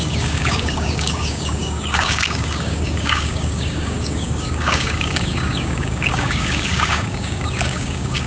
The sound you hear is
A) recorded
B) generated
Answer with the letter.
B